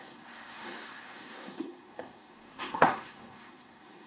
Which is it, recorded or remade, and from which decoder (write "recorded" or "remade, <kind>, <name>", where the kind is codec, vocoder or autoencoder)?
remade, codec, SNAC